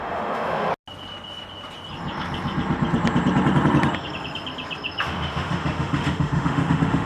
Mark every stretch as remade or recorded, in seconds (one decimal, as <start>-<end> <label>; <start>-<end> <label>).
0.0-0.7 remade; 0.7-5.0 recorded; 5.0-7.1 remade